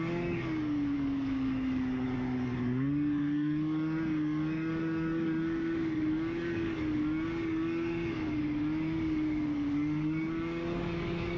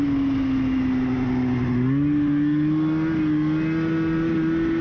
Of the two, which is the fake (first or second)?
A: first